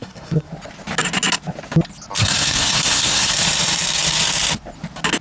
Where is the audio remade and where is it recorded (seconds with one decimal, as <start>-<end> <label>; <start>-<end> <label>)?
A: 0.0-0.5 remade; 0.5-2.2 recorded; 2.2-3.3 remade; 3.3-5.2 recorded